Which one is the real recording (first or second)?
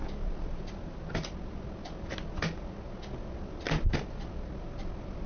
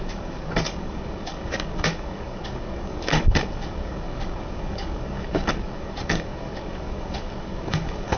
first